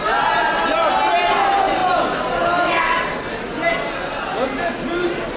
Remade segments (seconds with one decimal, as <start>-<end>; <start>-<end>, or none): none